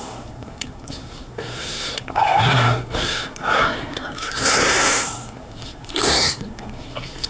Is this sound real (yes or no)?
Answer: no